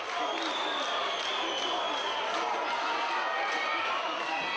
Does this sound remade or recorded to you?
recorded